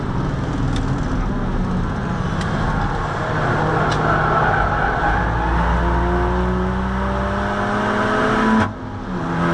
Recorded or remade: recorded